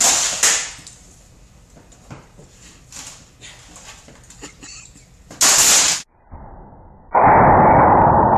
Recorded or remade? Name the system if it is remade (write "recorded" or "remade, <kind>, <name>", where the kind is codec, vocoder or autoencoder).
recorded